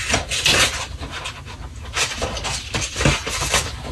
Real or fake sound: real